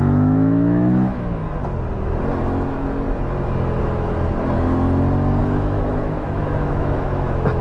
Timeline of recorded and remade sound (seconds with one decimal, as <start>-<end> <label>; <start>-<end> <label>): 0.0-1.4 remade; 1.4-5.4 recorded; 5.4-7.6 remade